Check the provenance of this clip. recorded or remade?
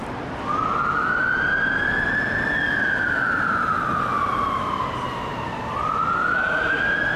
recorded